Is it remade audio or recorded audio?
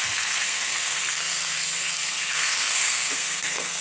remade